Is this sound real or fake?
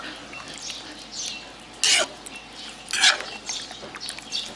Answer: real